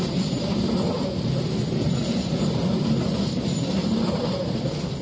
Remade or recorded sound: recorded